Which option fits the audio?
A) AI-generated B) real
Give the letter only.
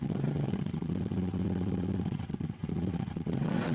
A